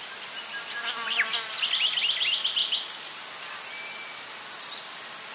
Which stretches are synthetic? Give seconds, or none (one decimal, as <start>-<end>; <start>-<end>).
none